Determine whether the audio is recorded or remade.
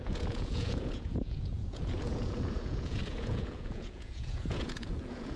remade